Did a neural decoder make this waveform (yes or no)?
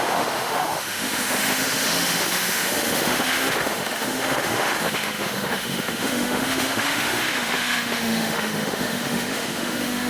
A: yes